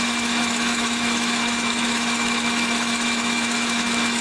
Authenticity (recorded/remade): remade